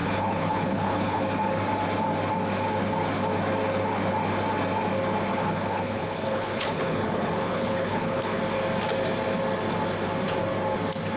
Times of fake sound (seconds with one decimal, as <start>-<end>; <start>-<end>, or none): 0.0-1.2; 5.3-8.4